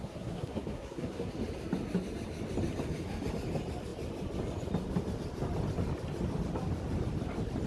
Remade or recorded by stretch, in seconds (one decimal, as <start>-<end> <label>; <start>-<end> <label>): 0.0-1.3 remade; 1.3-7.7 recorded